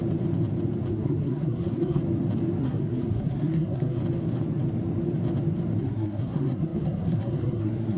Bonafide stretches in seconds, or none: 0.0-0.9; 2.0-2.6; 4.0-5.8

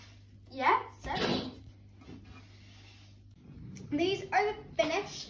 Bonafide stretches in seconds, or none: 0.0-5.3

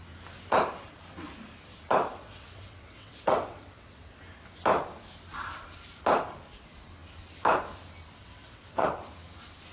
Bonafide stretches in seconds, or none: 0.0-2.1; 4.2-8.2; 8.9-9.7